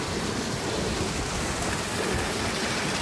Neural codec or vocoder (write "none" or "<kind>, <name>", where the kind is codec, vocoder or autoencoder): none